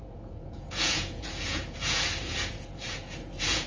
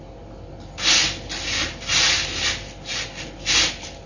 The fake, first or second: first